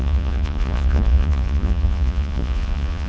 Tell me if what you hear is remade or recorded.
remade